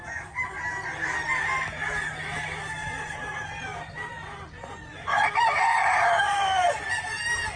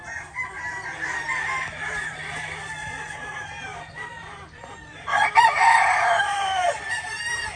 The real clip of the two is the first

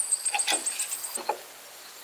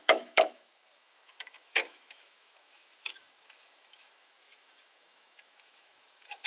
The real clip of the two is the first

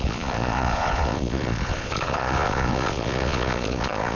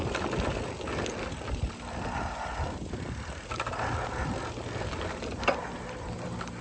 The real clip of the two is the second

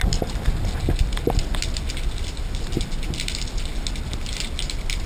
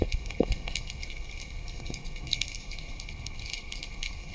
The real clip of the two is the first